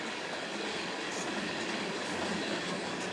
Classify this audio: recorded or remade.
remade